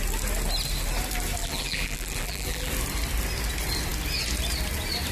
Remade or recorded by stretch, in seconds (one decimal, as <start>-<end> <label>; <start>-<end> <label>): 0.0-1.4 recorded; 1.4-2.7 remade; 2.7-5.1 recorded